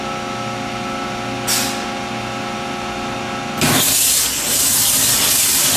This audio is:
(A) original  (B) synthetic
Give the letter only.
A